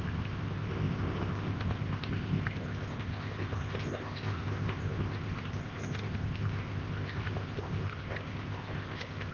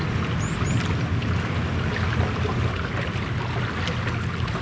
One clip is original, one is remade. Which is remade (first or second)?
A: first